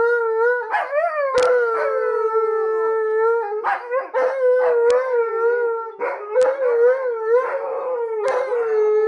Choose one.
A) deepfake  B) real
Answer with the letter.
B